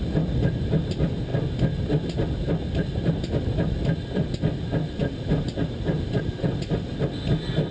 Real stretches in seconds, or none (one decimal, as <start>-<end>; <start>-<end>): 0.0-7.7